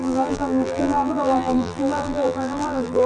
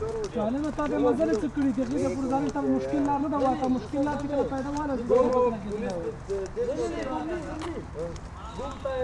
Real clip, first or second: second